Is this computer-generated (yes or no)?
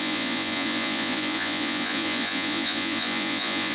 yes